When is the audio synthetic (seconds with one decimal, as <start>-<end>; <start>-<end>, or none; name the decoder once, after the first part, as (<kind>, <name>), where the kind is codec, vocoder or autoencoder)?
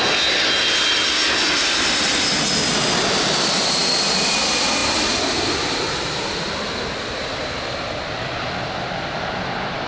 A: none